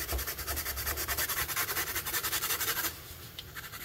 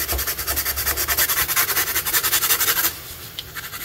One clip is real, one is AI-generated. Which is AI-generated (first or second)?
first